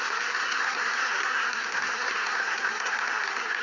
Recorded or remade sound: remade